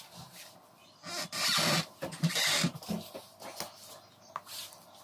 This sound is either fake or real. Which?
real